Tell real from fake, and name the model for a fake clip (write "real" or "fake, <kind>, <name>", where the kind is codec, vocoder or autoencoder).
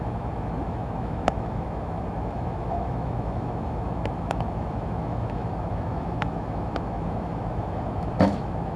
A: fake, autoencoder, DAC-VAE